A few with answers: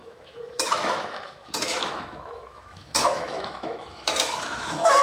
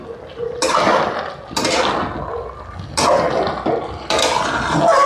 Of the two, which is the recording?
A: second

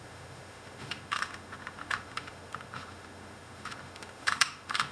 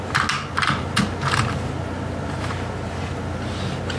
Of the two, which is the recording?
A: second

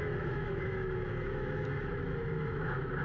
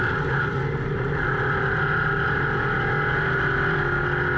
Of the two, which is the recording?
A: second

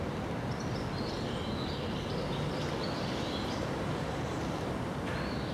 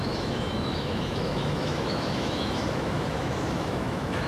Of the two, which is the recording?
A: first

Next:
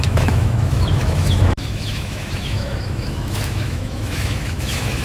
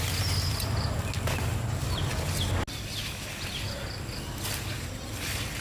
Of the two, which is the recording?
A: second